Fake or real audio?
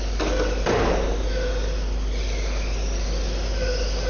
real